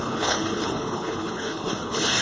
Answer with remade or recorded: remade